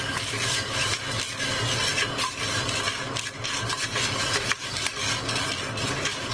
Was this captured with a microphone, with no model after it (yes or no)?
yes